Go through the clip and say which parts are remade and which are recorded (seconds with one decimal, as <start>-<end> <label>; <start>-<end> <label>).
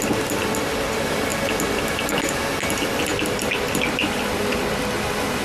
0.0-3.1 recorded; 3.1-3.7 remade; 3.7-5.4 recorded